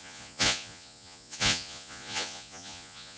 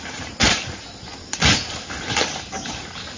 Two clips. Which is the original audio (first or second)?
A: second